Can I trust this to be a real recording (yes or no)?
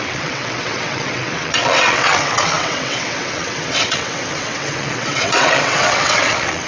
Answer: no